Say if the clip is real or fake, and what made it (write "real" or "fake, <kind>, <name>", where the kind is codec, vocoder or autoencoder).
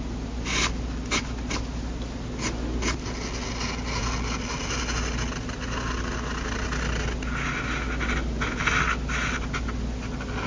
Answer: real